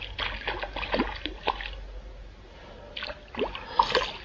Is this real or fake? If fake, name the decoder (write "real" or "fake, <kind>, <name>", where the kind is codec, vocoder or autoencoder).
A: real